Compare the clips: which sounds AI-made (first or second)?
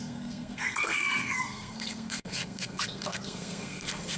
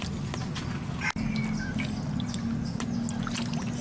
first